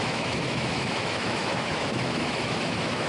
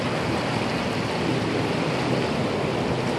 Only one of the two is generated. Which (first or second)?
first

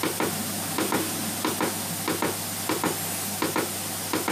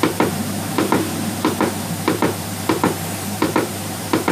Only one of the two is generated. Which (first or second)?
second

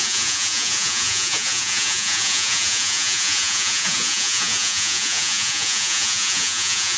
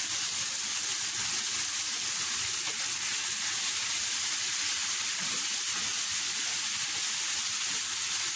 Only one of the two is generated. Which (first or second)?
first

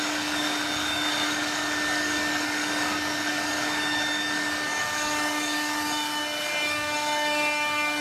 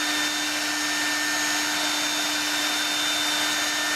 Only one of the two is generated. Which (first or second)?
first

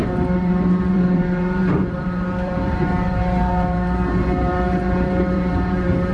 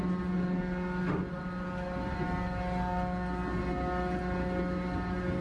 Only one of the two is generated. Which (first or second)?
first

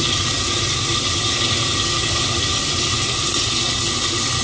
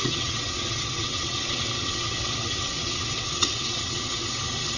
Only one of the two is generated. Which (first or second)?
second